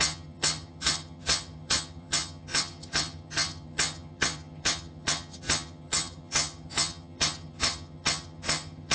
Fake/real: fake